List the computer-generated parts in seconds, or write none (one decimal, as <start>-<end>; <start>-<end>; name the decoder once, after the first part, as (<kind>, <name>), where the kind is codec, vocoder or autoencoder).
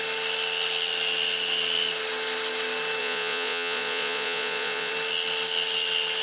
3.0-4.9 (vocoder, Vocos)